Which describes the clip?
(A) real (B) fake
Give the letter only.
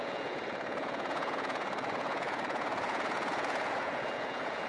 B